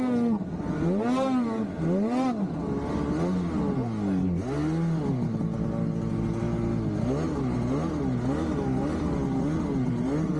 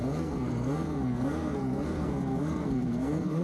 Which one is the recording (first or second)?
first